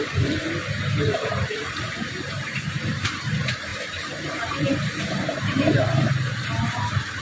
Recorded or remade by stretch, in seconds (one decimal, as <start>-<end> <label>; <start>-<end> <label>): 0.0-7.2 remade